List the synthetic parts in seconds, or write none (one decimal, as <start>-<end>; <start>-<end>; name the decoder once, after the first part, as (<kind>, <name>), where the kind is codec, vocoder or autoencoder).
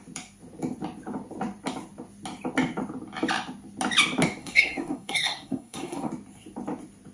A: 4.4-6.1 (codec, SNAC)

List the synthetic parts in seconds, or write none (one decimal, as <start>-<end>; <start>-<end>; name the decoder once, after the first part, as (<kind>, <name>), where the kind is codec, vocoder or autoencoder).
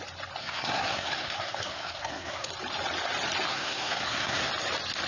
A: 0.4-2.5 (codec, SNAC); 3.5-4.5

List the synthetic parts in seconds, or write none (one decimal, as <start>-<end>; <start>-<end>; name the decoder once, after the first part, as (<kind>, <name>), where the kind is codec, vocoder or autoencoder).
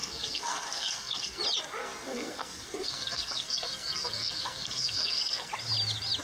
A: 0.0-1.4 (codec, SNAC); 1.8-5.5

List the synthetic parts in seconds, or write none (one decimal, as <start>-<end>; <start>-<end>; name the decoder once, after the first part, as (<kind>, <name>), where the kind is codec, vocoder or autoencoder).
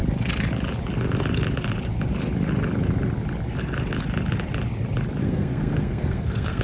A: 5.2-6.6 (codec, SNAC)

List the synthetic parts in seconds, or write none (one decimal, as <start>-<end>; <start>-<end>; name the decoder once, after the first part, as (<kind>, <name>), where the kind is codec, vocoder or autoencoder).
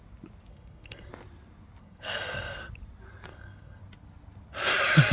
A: 0.5-1.1 (codec, SNAC); 1.8-2.6; 3.3-3.8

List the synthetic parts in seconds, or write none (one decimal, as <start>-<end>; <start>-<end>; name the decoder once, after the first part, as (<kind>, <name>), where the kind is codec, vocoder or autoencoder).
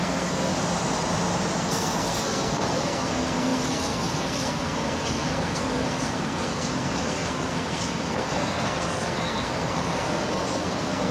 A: 0.0-0.5 (codec, SNAC); 1.6-11.1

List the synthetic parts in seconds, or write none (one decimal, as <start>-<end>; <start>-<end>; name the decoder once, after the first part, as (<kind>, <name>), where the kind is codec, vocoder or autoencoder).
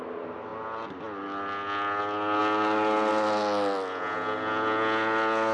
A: none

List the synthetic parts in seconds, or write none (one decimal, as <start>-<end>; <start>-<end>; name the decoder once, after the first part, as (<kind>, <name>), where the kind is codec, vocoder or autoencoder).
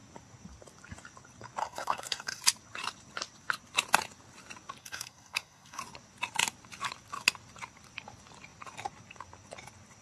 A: 1.6-2.4 (codec, SNAC); 4.8-5.8